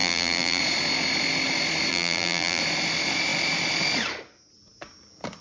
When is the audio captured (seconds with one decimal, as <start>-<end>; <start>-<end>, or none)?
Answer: 0.6-1.9; 2.6-5.4